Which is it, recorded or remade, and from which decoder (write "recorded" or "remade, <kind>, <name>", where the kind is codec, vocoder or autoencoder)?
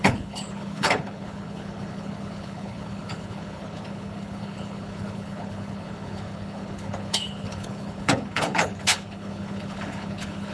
remade, codec, HILCodec